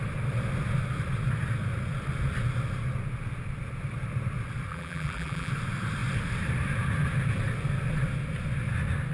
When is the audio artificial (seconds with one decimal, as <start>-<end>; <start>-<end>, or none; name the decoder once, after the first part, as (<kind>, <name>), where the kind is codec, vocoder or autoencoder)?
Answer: 4.7-5.5 (vocoder, BigVGAN v2)